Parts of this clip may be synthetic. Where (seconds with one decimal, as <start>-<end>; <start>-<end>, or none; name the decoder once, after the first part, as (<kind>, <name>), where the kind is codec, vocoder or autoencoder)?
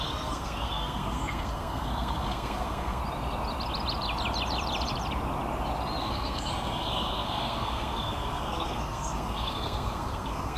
0.0-3.0 (codec, SNAC); 6.0-10.6